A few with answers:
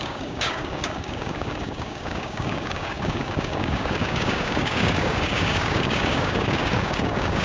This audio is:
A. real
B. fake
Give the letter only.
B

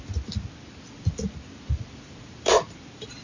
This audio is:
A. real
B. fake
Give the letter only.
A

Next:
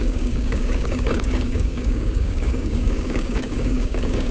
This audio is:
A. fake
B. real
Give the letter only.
A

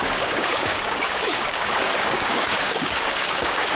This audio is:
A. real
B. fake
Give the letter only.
B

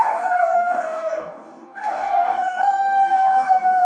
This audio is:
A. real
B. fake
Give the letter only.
B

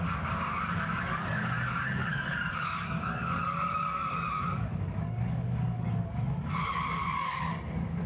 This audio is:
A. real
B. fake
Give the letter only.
B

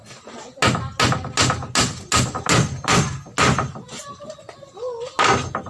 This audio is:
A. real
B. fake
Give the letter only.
A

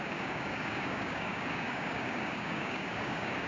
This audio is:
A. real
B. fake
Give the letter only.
B